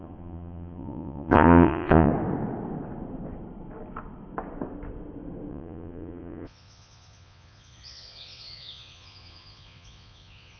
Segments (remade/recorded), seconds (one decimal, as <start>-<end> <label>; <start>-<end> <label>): 0.0-2.1 remade; 2.1-5.5 recorded; 5.5-10.6 remade